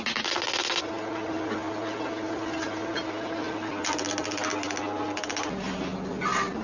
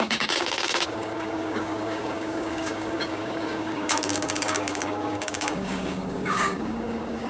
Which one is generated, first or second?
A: second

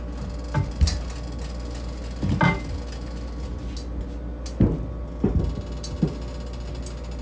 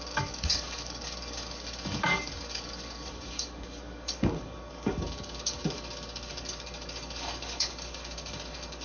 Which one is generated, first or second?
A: second